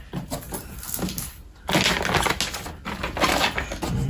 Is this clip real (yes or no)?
yes